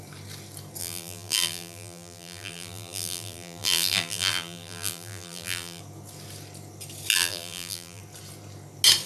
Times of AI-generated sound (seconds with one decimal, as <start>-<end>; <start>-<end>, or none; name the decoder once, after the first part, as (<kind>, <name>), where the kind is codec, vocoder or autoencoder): 0.8-5.8 (vocoder, BigVGAN v2); 7.1-8.0